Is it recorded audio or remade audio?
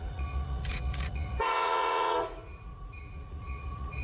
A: remade